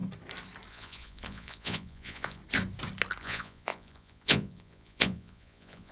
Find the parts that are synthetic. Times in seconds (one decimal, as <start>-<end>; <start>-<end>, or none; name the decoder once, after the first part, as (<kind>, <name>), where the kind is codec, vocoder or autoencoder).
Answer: 0.7-2.4 (vocoder, Vocos); 3.2-5.9